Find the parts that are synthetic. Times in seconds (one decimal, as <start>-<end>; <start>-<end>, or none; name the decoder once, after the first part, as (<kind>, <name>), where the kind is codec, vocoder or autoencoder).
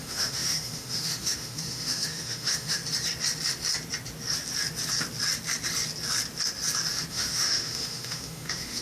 0.0-2.8 (autoencoder, DAC-VAE); 7.1-8.8